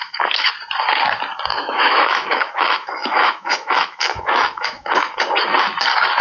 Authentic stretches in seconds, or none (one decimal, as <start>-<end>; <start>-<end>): 0.5-1.5; 5.2-6.2